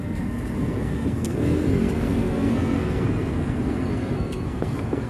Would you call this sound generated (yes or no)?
yes